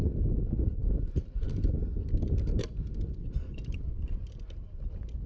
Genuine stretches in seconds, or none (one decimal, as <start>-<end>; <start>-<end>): 0.0-0.8; 4.0-5.3

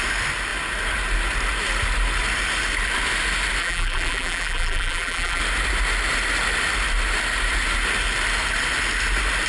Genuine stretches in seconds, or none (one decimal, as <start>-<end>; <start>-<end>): 0.0-3.6; 5.4-9.5

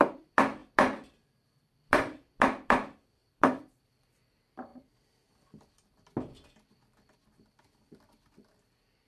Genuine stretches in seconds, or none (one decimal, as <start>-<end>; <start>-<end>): none

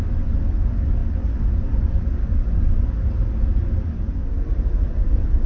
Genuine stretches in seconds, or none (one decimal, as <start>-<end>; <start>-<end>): 0.0-5.5

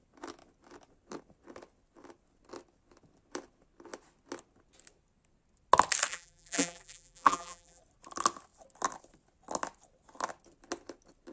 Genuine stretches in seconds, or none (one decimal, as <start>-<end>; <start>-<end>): 0.0-6.1; 7.8-11.3

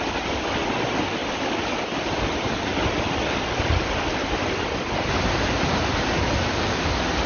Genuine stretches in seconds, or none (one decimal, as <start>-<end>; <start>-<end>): 0.0-1.2; 1.8-7.3